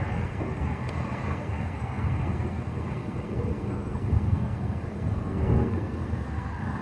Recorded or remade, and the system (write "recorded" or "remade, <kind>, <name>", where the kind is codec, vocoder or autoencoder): remade, codec, SNAC